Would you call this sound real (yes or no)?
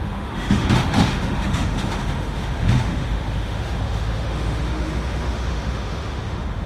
no